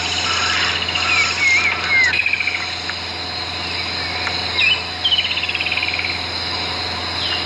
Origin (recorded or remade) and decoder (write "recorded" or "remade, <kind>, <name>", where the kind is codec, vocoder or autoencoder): recorded